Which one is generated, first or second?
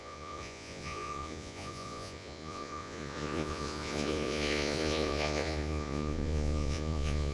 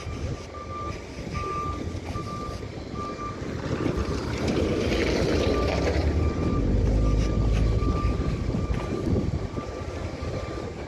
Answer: first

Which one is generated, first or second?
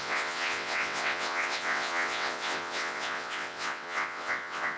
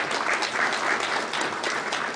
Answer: first